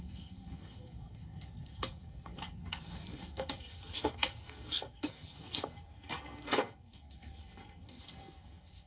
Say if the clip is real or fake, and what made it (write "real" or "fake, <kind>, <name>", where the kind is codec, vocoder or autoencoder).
fake, codec, SNAC